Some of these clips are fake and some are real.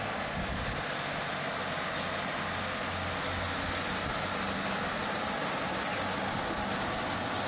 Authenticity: real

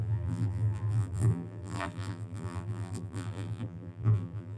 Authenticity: fake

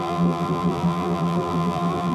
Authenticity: fake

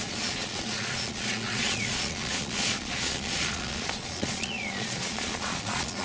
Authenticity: fake